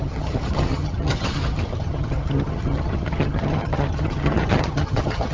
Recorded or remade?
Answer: remade